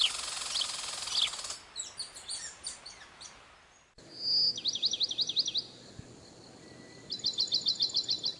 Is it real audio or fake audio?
real